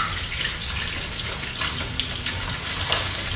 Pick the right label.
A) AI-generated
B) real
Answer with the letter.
B